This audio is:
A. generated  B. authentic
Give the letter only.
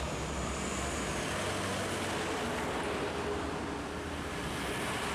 B